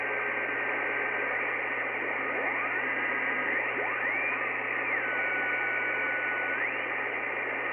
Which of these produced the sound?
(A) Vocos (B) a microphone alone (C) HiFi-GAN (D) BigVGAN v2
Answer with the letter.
B